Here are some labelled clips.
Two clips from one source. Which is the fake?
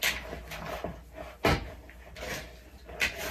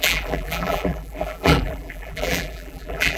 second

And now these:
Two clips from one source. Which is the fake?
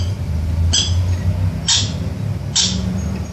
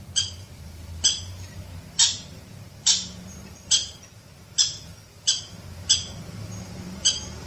second